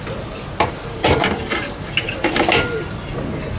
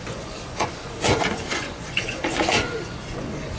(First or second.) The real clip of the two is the first